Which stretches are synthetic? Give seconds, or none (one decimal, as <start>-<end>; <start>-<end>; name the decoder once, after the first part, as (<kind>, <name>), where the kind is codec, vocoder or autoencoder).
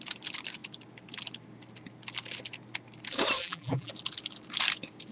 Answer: 3.4-3.9 (vocoder, BigVGAN v2)